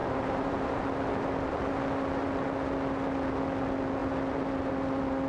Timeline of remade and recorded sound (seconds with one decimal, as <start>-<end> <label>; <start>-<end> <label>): 0.0-0.8 remade; 0.8-5.3 recorded